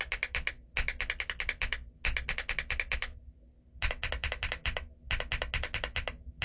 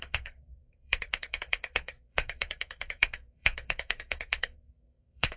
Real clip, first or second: first